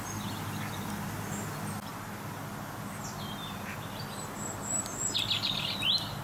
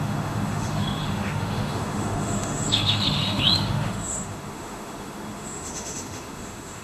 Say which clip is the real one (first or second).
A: first